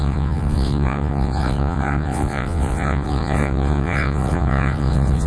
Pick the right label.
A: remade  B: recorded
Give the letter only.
A